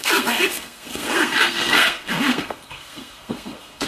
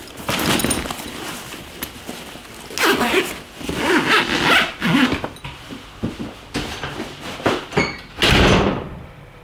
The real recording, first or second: second